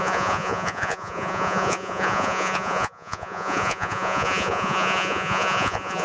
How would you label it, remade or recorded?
remade